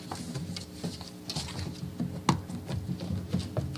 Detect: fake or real real